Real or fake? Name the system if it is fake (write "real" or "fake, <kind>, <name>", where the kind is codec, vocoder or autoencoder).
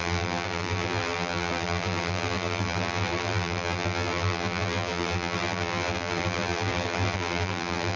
fake, vocoder, BigVGAN v2